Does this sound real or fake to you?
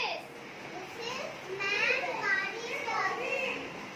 real